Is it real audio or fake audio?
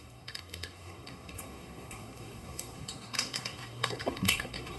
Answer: fake